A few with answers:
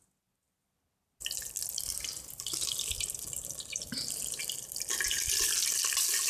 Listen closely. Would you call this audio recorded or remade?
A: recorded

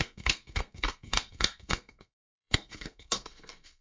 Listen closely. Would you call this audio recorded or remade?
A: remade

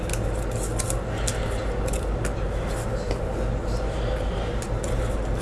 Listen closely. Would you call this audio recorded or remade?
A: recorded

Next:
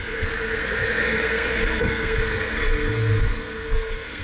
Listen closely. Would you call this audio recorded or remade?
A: remade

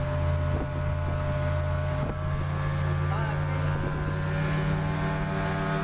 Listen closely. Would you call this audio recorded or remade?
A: recorded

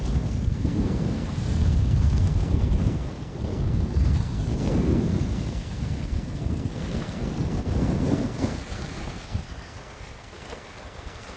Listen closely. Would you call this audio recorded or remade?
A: remade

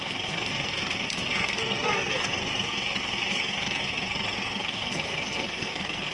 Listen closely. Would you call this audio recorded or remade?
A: remade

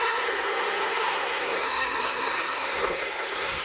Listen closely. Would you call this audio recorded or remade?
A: remade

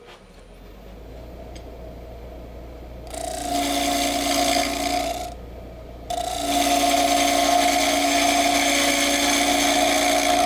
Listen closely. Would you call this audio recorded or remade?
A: recorded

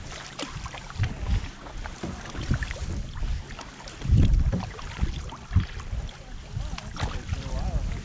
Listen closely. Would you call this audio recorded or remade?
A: recorded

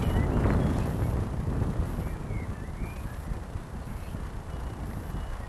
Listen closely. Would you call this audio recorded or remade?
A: recorded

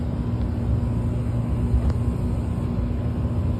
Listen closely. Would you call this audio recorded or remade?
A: recorded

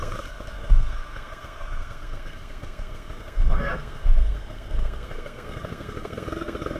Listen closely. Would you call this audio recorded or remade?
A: remade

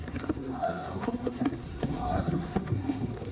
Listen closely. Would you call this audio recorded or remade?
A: remade